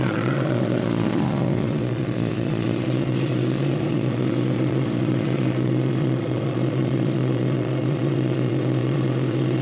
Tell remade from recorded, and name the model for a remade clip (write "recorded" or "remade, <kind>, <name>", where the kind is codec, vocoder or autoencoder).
remade, vocoder, Vocos